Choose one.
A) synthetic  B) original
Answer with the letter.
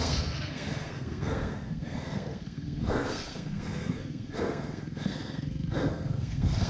A